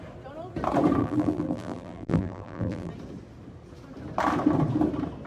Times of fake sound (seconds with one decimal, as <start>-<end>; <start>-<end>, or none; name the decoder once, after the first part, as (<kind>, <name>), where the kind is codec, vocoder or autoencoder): 1.0-2.9 (vocoder, BigVGAN v2)